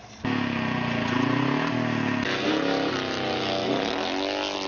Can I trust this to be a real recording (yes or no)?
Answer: yes